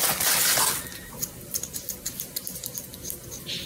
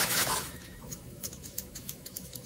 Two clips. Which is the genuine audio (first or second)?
first